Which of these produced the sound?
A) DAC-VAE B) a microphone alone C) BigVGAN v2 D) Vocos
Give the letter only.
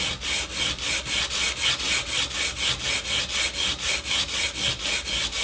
B